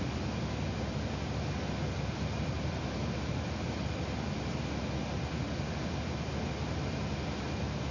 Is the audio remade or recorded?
recorded